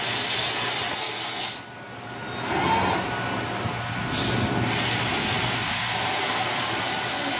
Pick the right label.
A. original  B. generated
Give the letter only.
A